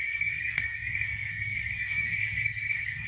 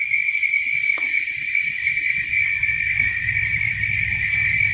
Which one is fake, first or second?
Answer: first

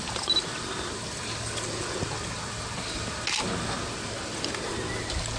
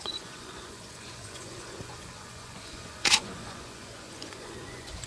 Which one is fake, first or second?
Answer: second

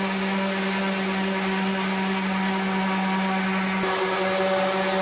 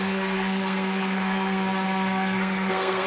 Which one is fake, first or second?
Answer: second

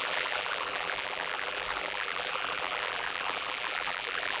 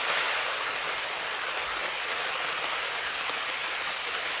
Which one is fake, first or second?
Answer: first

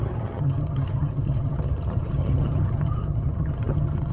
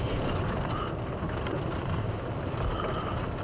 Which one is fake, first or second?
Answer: first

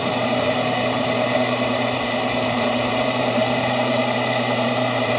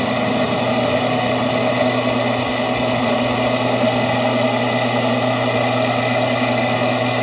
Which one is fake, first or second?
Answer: first